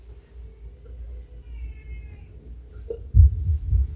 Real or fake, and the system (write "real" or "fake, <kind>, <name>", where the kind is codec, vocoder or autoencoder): real